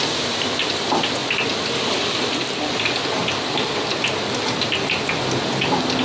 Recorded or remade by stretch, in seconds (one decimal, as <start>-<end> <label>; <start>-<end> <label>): 0.0-6.0 recorded